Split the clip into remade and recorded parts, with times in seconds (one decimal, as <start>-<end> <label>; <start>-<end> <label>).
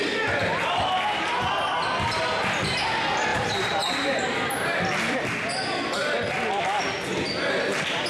0.0-3.3 recorded; 3.3-4.1 remade; 4.1-8.1 recorded